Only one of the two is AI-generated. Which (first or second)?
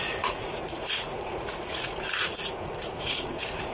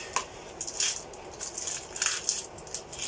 first